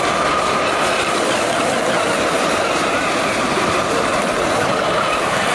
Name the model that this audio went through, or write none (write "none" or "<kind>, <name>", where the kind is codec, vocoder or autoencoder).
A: none